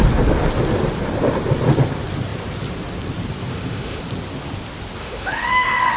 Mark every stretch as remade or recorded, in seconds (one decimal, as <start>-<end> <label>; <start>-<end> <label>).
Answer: 0.0-3.5 recorded; 3.5-4.0 remade; 4.0-5.0 recorded; 5.0-6.0 remade